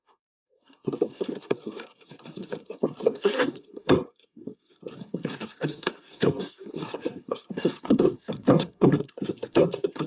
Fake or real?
fake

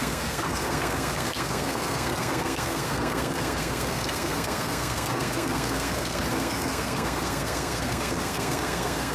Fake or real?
fake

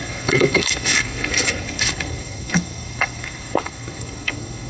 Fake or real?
fake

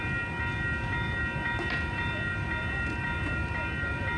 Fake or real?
real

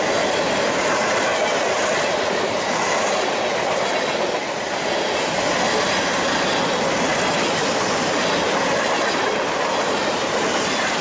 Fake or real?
real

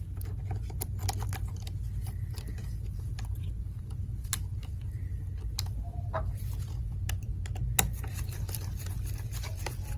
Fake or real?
real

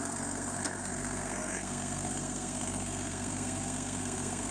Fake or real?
fake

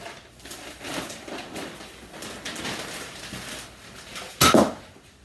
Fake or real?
real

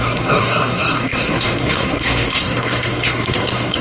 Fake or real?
fake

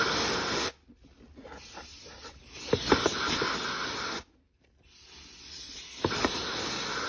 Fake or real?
real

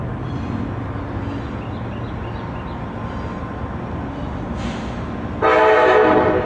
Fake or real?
real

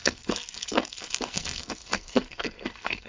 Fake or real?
fake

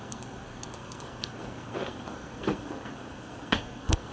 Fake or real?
fake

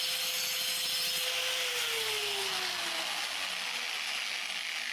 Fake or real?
real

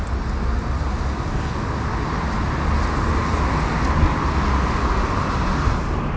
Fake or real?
real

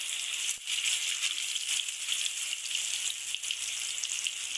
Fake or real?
real